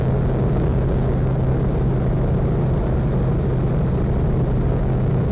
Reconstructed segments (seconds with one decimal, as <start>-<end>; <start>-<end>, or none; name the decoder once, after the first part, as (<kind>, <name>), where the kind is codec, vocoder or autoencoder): 0.0-1.5 (codec, DAC); 4.7-5.3